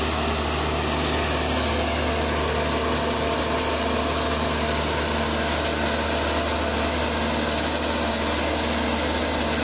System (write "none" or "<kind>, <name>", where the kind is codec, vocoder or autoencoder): none